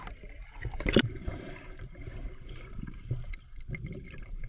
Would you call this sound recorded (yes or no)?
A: no